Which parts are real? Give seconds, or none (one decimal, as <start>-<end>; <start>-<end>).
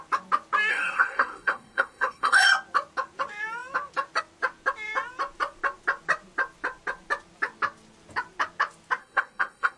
0.0-0.7; 2.5-9.0